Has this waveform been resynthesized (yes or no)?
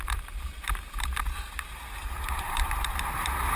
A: yes